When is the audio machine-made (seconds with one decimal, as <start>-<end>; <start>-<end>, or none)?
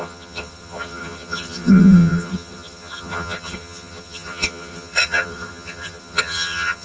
0.0-6.8